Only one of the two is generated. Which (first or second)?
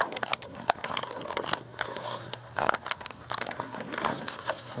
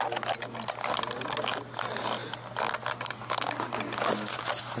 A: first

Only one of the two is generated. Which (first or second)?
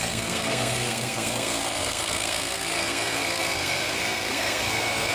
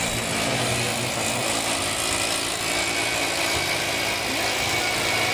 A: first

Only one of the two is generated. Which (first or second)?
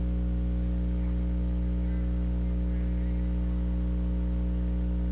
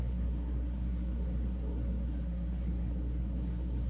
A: second